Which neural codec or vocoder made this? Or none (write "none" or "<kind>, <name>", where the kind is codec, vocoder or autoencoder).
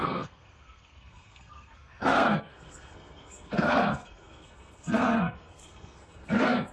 codec, SNAC